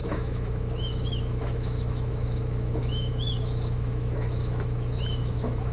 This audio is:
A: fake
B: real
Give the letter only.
A